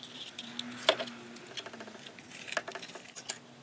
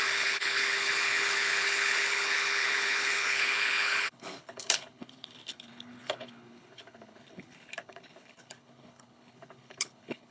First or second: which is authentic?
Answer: first